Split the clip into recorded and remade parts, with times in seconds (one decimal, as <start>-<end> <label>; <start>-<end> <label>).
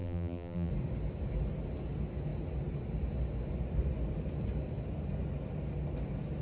0.0-0.7 remade; 0.7-6.4 recorded